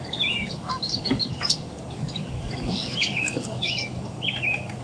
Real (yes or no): no